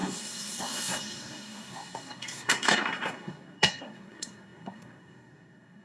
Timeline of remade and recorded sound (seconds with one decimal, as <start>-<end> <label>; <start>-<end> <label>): 0.0-5.8 remade